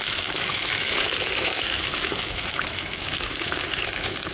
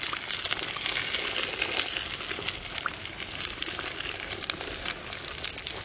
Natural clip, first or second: second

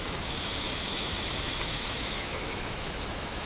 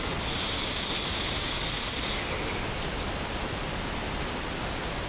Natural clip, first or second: second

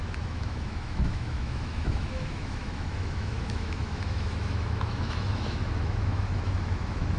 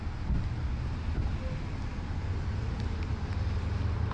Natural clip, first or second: second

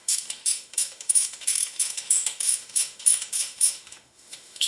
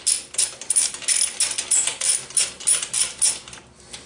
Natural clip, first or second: second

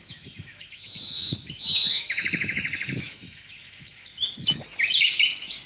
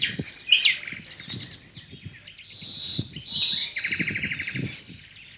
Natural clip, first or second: second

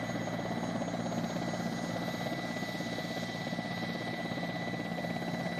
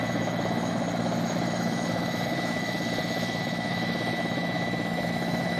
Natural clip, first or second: first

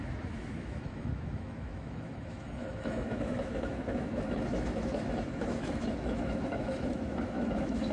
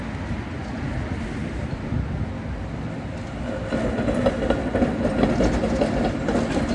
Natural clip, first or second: second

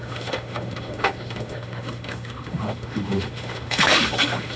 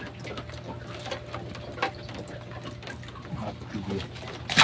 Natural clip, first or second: second